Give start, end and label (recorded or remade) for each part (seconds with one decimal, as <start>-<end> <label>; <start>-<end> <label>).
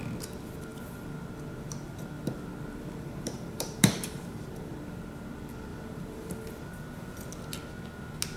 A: 0.0-2.7 recorded; 2.7-4.7 remade; 4.7-5.7 recorded; 5.7-6.4 remade; 6.4-8.4 recorded